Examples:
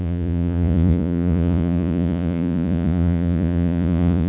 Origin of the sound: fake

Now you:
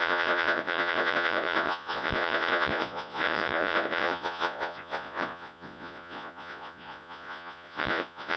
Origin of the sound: fake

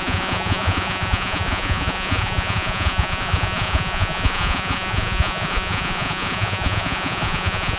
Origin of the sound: fake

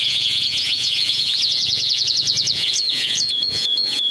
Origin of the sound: fake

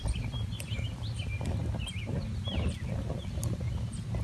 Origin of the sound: real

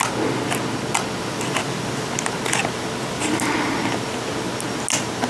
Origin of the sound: real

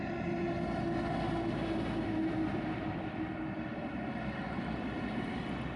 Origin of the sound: real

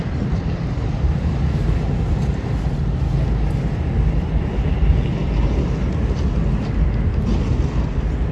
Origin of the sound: real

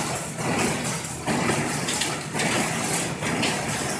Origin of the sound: real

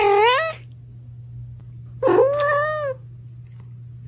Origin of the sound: real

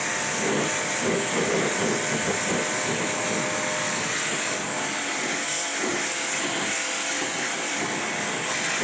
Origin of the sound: real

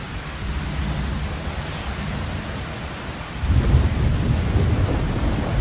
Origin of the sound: real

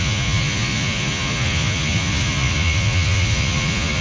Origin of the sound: fake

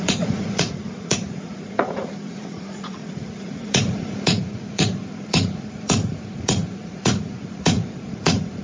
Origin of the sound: fake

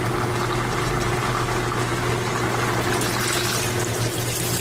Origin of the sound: real